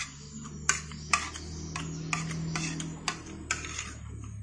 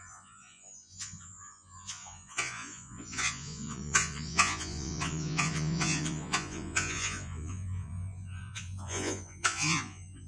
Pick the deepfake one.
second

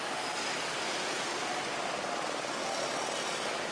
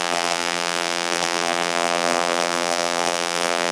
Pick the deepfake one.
second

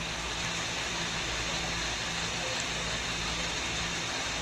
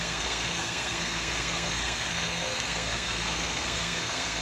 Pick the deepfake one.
second